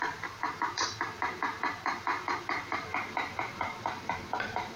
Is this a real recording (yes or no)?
no